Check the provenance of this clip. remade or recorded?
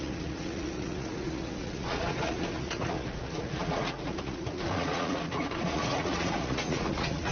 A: remade